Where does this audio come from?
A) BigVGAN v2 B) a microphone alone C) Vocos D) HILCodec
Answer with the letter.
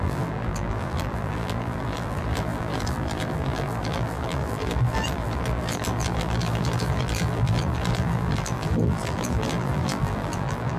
A